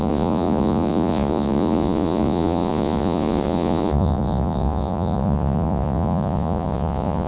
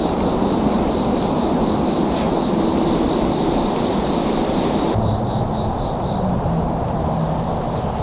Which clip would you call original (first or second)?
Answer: second